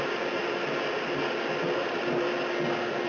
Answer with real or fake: real